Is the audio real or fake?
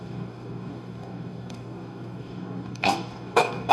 fake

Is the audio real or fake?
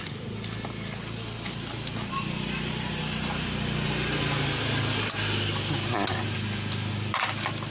real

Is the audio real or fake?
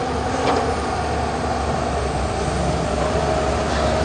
real